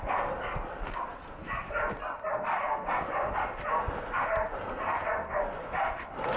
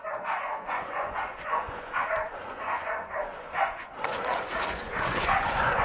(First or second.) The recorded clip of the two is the first